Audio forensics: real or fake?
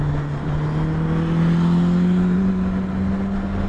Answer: real